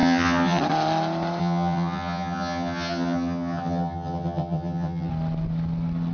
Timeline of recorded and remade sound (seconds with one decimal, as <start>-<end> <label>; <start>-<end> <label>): 0.0-0.6 remade; 0.6-1.4 recorded; 1.4-5.1 remade; 5.1-6.1 recorded